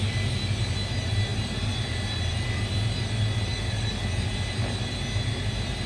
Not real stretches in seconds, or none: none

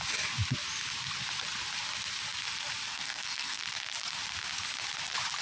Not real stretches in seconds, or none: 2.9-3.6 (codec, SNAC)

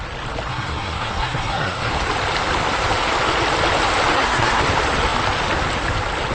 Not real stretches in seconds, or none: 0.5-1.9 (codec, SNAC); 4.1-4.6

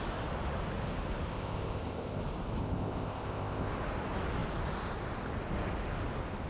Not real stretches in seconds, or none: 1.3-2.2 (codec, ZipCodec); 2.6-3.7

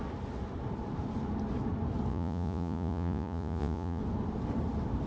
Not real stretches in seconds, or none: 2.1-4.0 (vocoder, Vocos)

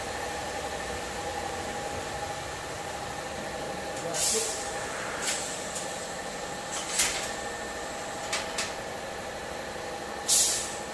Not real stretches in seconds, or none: none

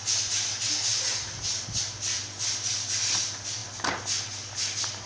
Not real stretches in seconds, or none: none